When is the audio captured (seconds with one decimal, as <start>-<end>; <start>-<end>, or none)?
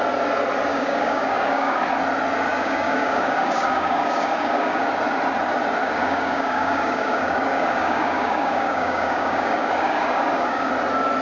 0.0-0.7; 1.8-2.5; 4.9-5.8; 10.7-11.2